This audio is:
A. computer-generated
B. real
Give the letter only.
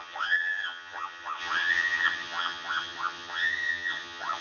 A